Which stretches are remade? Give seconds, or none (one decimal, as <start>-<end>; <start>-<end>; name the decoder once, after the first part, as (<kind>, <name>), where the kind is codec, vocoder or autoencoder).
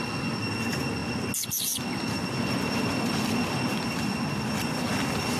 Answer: none